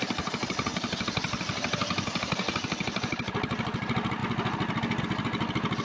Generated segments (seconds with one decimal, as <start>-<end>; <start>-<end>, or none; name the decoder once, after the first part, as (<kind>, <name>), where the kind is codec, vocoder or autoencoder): none